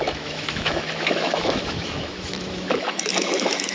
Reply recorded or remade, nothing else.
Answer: remade